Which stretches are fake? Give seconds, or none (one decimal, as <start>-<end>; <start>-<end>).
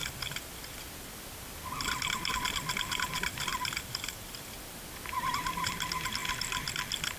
0.0-7.2